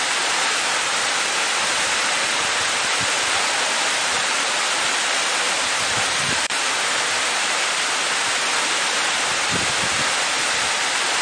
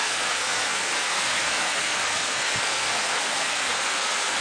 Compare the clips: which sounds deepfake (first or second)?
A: second